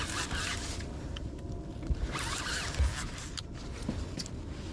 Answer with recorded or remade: recorded